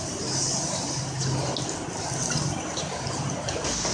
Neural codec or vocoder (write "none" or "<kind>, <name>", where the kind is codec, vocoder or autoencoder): none